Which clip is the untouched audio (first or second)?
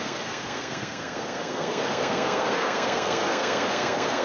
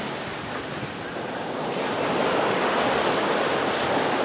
second